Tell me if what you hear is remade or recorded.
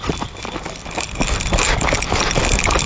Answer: recorded